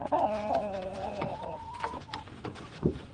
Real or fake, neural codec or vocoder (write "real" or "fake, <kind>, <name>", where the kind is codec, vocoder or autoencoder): fake, vocoder, Vocos